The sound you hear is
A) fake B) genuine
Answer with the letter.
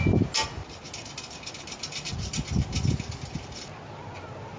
B